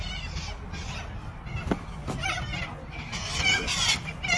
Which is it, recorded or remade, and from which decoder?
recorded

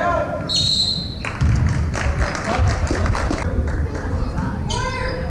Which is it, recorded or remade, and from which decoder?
remade, vocoder, BigVGAN v2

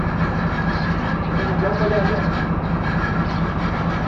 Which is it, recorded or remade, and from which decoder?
remade, vocoder, BigVGAN v2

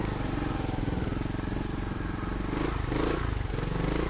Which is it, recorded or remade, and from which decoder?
recorded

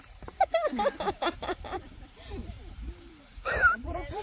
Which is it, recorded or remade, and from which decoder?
remade, vocoder, BigVGAN v2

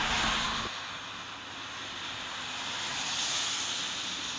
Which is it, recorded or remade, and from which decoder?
recorded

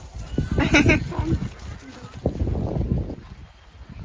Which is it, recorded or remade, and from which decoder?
recorded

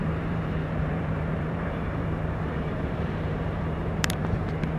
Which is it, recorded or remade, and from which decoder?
remade, vocoder, BigVGAN v2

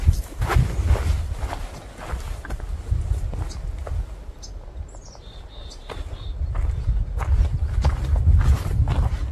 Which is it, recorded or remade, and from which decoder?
recorded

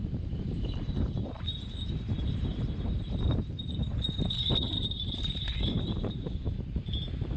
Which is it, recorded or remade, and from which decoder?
remade, vocoder, BigVGAN v2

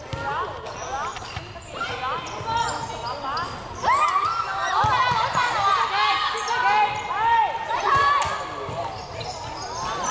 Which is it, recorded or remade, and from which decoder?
recorded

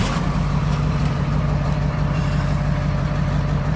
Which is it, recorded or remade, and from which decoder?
remade, vocoder, BigVGAN v2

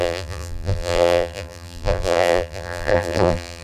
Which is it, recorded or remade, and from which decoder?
remade, vocoder, BigVGAN v2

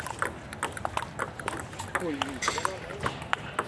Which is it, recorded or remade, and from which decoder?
recorded